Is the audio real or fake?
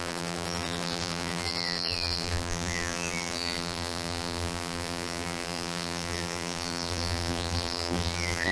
fake